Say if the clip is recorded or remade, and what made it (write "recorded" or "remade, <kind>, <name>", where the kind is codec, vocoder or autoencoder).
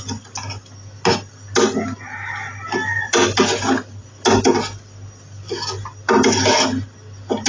recorded